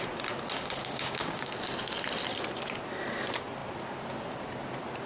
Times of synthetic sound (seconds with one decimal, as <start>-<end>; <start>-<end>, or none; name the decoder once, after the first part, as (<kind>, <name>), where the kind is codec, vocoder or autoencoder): 0.8-1.5 (codec, DAC)